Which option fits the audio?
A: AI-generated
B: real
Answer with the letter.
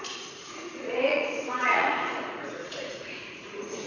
A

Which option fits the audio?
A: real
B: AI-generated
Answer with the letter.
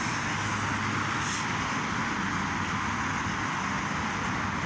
A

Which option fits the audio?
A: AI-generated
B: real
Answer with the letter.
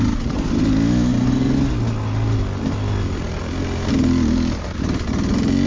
B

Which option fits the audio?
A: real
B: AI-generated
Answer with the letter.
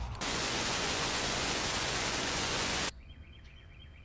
B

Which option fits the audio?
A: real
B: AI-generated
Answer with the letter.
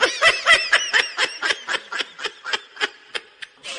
A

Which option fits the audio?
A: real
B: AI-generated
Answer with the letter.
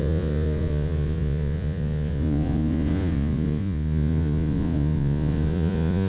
B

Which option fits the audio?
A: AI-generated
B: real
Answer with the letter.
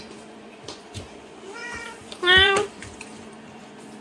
A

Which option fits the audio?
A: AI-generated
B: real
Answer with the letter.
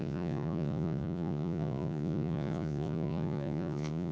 A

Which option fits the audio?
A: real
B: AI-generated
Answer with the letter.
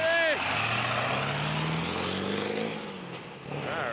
A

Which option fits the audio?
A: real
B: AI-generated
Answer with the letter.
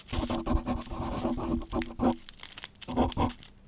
A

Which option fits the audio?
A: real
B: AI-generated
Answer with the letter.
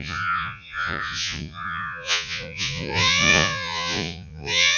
B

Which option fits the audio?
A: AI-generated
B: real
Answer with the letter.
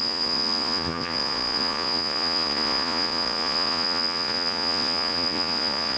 A